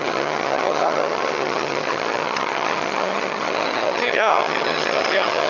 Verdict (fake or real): fake